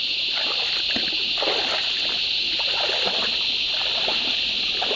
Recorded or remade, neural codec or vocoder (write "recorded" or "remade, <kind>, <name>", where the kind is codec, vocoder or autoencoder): recorded